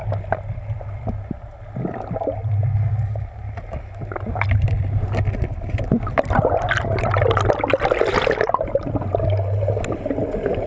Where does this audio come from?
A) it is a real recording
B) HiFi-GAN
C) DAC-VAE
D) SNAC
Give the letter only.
A